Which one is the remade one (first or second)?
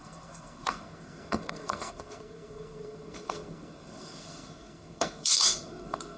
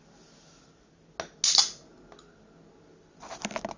first